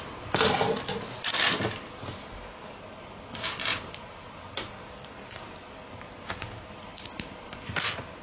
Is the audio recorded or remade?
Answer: recorded